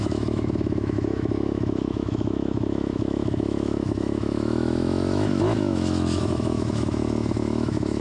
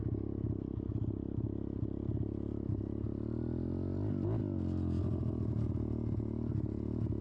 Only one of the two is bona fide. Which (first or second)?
second